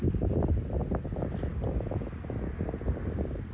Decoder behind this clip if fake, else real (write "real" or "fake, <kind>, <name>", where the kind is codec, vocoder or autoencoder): real